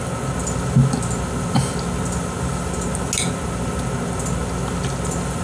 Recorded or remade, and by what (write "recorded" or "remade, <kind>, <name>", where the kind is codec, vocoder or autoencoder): recorded